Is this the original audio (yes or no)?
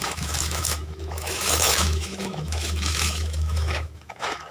no